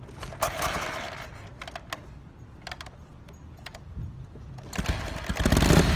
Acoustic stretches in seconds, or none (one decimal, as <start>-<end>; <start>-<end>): 0.0-3.1; 4.6-6.0